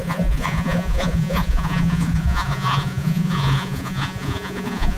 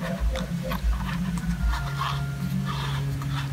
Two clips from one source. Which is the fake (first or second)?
first